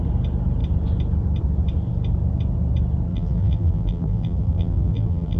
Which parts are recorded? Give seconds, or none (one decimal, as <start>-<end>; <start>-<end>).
0.0-3.1